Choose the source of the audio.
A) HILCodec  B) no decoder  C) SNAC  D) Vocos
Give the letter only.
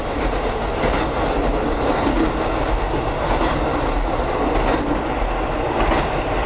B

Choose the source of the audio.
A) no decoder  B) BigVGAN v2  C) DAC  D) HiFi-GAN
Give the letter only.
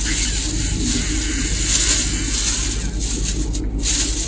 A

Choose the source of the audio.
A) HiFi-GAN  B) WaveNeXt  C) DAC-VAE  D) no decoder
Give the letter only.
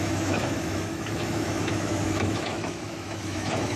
C